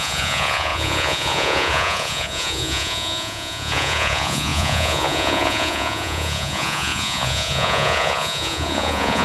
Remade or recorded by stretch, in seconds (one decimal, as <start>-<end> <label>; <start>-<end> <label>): 0.0-9.2 remade